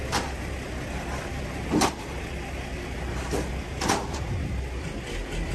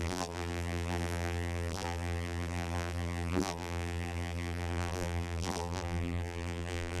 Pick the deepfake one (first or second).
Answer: second